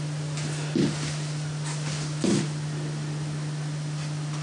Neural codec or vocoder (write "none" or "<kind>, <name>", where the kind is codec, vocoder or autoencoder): none